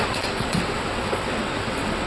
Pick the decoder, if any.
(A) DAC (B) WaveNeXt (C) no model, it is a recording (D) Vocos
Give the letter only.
B